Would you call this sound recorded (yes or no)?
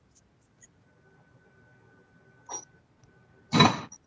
yes